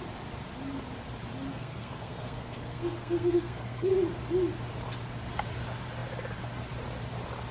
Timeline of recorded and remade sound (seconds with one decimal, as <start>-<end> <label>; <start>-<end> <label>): 0.0-1.5 recorded; 1.5-3.9 remade; 3.9-7.5 recorded